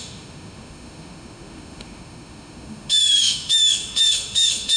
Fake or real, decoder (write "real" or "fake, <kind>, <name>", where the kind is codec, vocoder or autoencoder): fake, autoencoder, DAC-VAE